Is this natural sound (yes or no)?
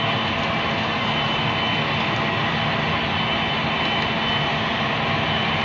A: yes